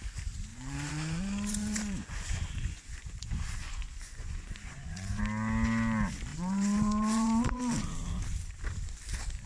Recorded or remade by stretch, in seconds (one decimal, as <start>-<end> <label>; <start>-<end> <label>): 0.0-0.5 recorded; 0.5-5.2 remade; 5.2-6.3 recorded; 6.3-7.6 remade; 7.6-9.5 recorded